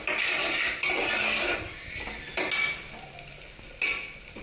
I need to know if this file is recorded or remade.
recorded